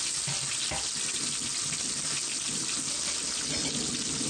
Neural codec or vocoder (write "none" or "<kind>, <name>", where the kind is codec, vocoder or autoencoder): none